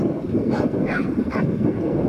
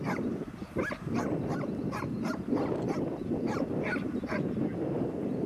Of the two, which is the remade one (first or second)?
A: first